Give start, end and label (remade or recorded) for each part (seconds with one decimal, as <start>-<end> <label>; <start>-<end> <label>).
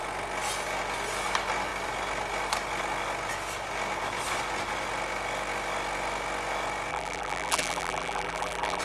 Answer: 0.0-6.9 recorded; 6.9-8.8 remade